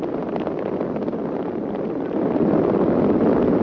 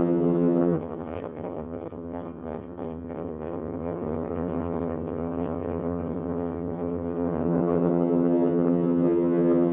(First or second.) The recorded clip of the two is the first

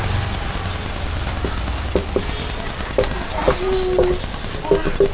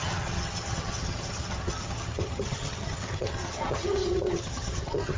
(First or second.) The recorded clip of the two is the first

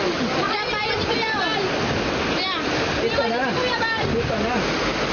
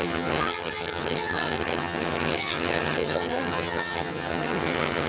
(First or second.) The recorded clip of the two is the first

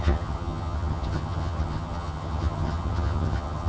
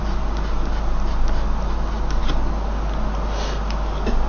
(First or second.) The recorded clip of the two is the second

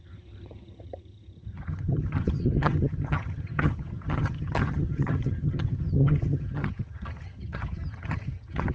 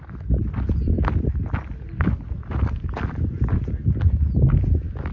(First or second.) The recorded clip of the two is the second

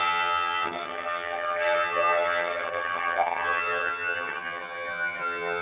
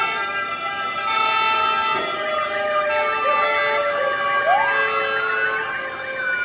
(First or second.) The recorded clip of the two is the second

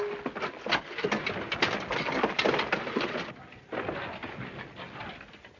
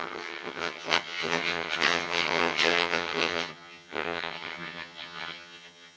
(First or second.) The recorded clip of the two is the first